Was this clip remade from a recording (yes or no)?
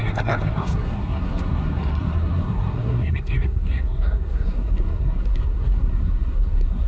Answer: yes